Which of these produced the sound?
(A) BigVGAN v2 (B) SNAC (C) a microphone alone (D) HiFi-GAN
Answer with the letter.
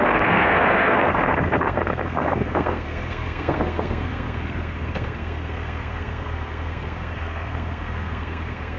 B